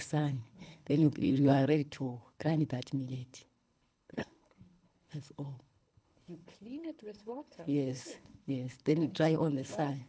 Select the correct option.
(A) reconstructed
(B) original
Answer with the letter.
A